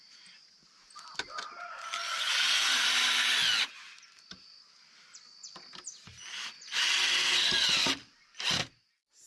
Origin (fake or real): real